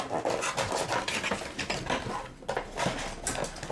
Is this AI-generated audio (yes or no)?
no